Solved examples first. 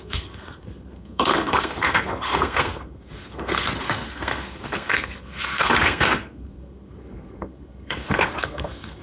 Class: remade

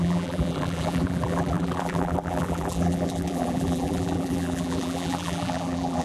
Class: remade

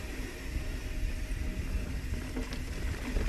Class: recorded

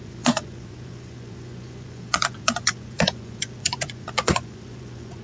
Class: remade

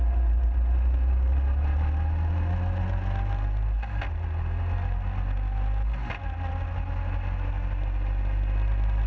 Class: recorded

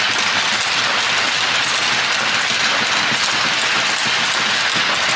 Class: recorded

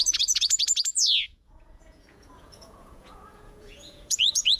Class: remade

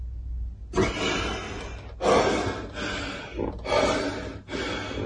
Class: recorded